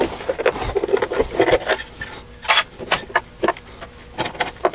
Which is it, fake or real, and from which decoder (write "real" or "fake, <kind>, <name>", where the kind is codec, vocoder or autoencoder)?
real